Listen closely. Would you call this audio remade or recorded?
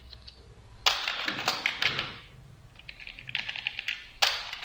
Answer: recorded